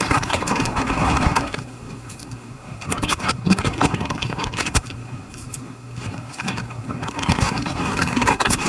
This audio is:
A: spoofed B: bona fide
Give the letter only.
A